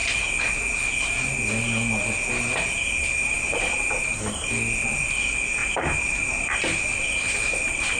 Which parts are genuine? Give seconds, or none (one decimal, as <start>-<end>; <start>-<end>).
0.0-3.2; 4.5-5.6